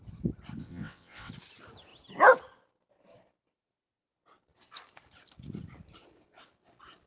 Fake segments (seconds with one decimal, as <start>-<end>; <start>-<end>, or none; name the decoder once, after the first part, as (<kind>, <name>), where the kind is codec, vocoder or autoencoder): 0.6-1.3 (vocoder, WaveNeXt)